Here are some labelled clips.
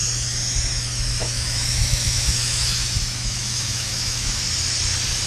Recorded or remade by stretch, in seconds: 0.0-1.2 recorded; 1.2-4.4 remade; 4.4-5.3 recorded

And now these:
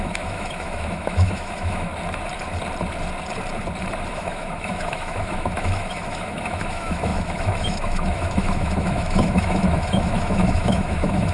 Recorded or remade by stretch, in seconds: 0.0-1.9 remade; 1.9-4.1 recorded; 4.1-11.3 remade

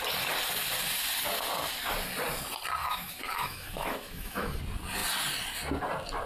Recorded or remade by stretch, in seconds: 0.0-2.8 recorded; 2.8-4.6 remade; 4.6-6.3 recorded